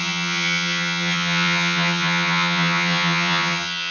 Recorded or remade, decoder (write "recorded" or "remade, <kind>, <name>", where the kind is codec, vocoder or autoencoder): remade, vocoder, HiFi-GAN